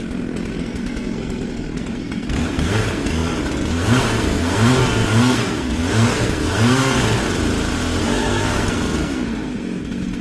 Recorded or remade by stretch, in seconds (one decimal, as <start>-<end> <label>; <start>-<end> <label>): 0.0-7.2 remade; 7.2-8.0 recorded; 8.0-10.2 remade